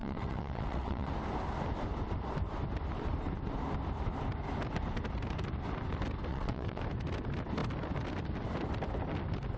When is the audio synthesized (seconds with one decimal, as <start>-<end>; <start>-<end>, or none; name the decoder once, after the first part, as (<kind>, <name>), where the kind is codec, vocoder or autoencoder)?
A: 0.0-1.1 (vocoder, WaveNeXt); 6.3-6.8